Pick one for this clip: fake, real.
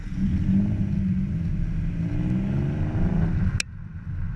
real